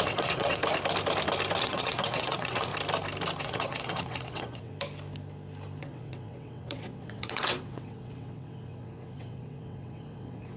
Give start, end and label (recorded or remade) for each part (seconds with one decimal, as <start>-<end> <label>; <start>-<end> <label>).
0.0-0.6 remade; 0.6-1.6 recorded; 1.6-2.7 remade; 2.7-3.4 recorded; 3.4-4.7 remade; 4.7-5.8 recorded; 5.8-10.6 remade